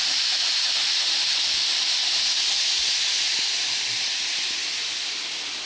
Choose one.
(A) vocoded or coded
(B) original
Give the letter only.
B